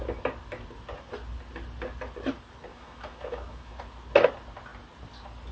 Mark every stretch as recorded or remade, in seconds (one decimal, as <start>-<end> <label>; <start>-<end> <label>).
0.0-2.7 recorded; 2.7-3.8 remade; 3.8-5.5 recorded

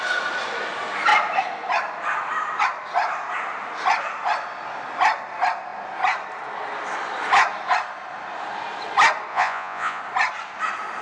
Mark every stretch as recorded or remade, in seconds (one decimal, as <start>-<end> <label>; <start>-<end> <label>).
0.0-9.3 recorded; 9.3-10.0 remade; 10.0-11.0 recorded

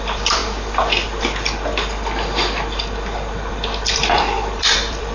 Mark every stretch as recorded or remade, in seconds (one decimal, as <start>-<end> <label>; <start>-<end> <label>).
0.0-0.4 remade; 0.4-3.5 recorded; 3.5-5.1 remade